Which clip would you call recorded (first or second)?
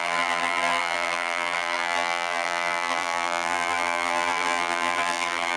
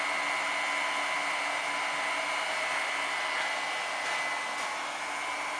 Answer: second